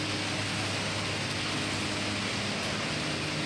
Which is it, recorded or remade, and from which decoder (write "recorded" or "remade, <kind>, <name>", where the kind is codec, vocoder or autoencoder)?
recorded